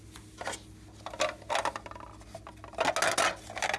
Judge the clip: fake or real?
real